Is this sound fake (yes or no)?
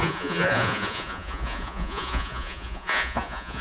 yes